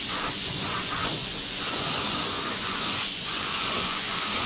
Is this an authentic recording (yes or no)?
no